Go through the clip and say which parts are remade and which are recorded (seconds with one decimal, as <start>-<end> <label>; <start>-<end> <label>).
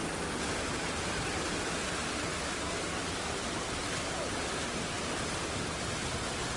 0.0-6.6 recorded